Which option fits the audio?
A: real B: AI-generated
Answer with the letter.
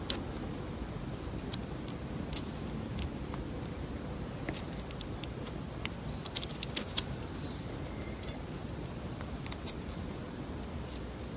A